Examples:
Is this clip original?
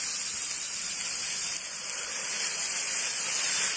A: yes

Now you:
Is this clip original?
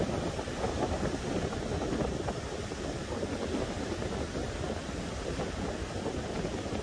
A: yes